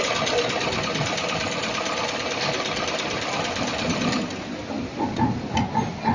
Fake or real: real